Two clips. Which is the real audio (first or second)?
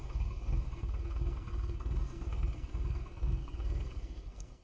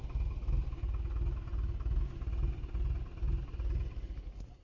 second